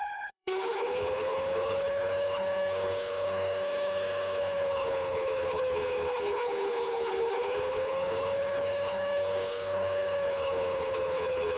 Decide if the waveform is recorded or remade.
remade